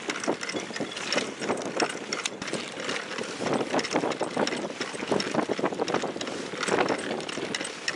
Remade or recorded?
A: recorded